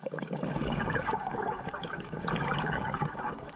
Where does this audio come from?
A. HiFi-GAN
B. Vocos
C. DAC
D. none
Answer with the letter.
C